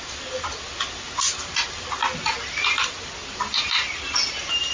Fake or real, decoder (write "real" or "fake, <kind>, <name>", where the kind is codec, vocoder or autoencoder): real